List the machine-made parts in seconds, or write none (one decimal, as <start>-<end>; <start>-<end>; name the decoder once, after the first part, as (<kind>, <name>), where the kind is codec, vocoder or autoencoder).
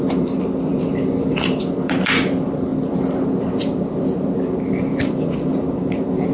0.0-2.7 (vocoder, BigVGAN v2); 4.8-6.3